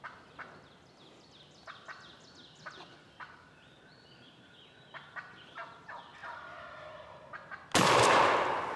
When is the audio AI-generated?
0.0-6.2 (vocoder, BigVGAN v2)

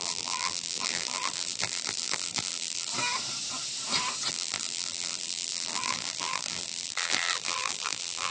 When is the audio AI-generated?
0.0-2.9 (vocoder, BigVGAN v2); 4.3-8.3

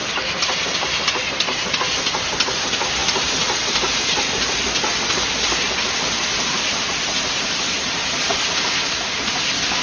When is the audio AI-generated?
0.0-9.8 (vocoder, BigVGAN v2)

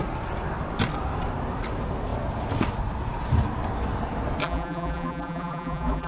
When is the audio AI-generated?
4.4-6.1 (vocoder, BigVGAN v2)

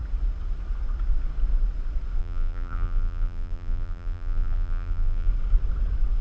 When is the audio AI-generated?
2.2-5.3 (vocoder, BigVGAN v2)

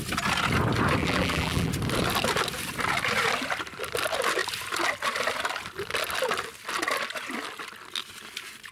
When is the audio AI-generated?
1.0-1.7 (vocoder, BigVGAN v2)

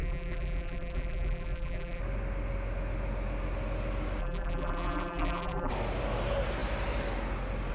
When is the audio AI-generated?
0.0-2.0 (vocoder, BigVGAN v2); 4.2-5.7

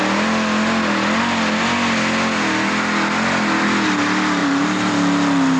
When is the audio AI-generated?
4.4-4.9 (vocoder, BigVGAN v2)